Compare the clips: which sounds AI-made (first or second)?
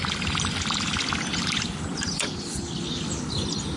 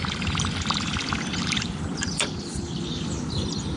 second